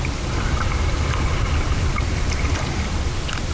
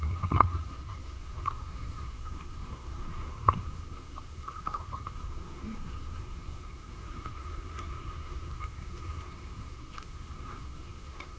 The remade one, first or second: second